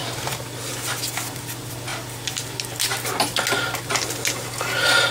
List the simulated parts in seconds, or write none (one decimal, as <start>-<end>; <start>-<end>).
none